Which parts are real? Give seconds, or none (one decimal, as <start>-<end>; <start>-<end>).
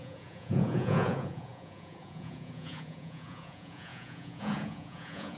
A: none